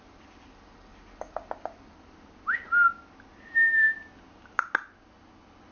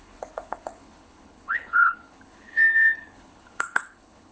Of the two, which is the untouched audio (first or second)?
first